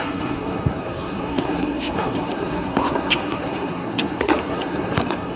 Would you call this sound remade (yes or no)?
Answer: yes